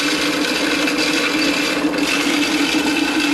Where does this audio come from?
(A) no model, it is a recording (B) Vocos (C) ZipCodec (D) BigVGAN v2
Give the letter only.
A